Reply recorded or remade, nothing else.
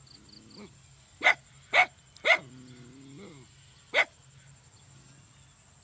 recorded